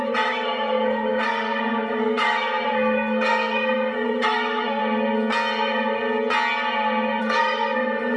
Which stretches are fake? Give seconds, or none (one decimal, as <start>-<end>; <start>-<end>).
0.0-4.8; 7.2-8.2